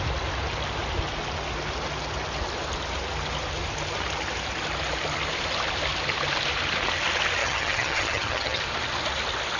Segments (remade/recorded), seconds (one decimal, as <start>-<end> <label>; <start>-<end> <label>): 0.0-7.4 recorded; 7.4-8.6 remade; 8.6-9.6 recorded